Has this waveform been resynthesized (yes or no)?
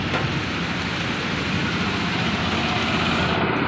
no